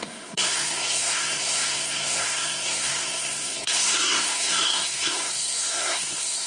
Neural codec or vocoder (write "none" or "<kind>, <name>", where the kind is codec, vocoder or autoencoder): codec, SNAC